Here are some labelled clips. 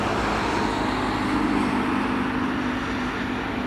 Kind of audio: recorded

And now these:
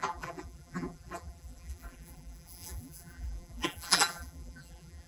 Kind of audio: remade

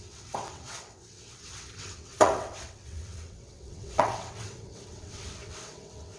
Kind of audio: remade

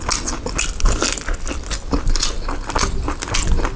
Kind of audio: recorded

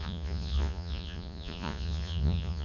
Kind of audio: remade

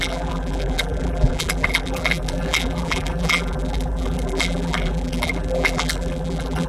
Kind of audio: remade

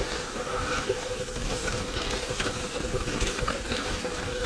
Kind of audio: remade